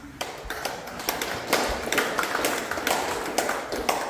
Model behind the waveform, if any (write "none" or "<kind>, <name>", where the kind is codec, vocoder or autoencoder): none